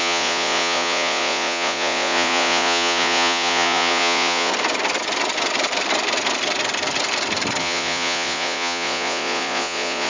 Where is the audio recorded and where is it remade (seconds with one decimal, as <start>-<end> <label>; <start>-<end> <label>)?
0.0-4.5 remade; 4.5-7.6 recorded; 7.6-10.1 remade